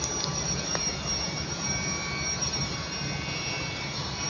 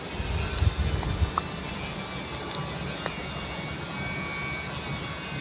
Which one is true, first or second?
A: second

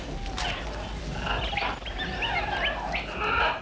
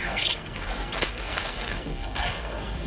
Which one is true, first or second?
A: first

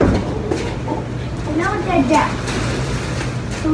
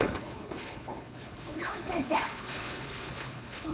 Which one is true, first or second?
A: first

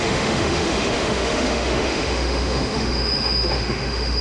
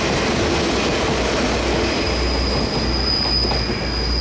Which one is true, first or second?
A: second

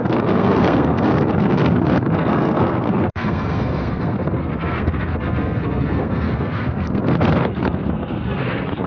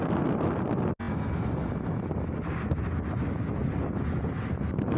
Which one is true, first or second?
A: second